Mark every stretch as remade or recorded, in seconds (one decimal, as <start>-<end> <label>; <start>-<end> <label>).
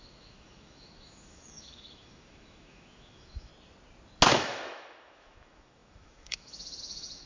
0.0-3.5 remade; 3.5-4.3 recorded; 4.3-7.3 remade